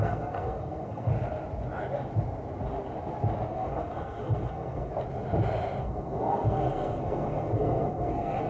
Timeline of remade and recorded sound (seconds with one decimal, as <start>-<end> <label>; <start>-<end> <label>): 0.0-1.1 remade; 1.1-3.5 recorded; 3.5-4.9 remade; 4.9-5.8 recorded; 5.8-8.5 remade